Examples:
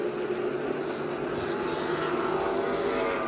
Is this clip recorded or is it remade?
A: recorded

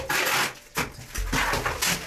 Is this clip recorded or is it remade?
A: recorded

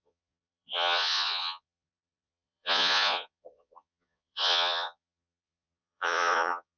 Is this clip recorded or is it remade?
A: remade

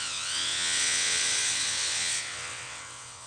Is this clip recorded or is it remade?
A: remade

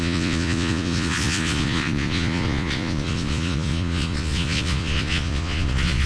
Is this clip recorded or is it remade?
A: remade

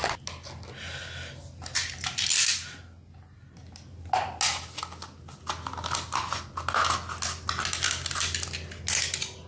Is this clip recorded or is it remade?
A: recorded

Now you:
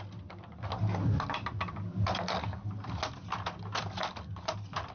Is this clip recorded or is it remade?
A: recorded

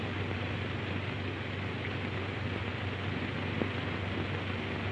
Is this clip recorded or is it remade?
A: recorded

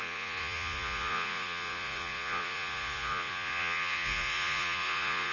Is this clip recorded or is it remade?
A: remade